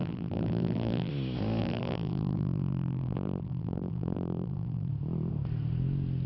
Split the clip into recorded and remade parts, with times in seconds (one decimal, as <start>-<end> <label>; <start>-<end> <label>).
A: 0.0-1.1 remade; 1.1-1.6 recorded; 1.6-4.9 remade; 4.9-6.3 recorded